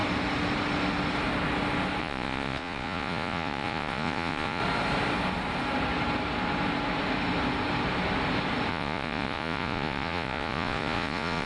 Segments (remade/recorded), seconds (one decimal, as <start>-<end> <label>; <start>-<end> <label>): 0.0-2.0 recorded; 2.0-4.6 remade; 4.6-8.7 recorded; 8.7-11.5 remade

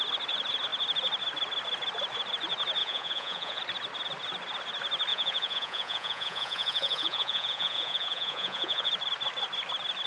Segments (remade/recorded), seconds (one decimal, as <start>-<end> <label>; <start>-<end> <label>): 0.0-2.8 recorded; 2.8-3.6 remade; 3.6-5.1 recorded; 5.1-8.9 remade; 8.9-10.1 recorded

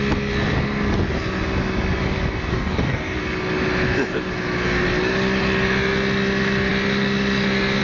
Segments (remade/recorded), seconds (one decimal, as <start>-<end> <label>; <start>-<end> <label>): 0.0-2.5 recorded; 2.5-3.2 remade; 3.2-7.8 recorded

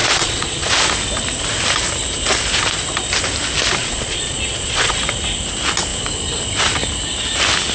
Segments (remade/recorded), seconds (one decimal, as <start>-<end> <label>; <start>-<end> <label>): 0.0-0.7 remade; 0.7-3.8 recorded; 3.8-4.9 remade; 4.9-7.7 recorded

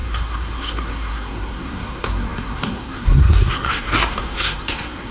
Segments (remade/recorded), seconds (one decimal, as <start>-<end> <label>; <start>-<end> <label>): 0.0-5.1 remade